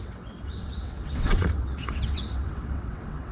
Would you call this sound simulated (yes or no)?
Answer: yes